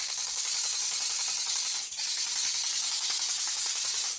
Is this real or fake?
fake